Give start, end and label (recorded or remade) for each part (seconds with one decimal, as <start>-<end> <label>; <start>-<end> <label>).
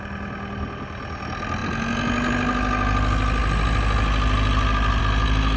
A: 0.0-5.6 recorded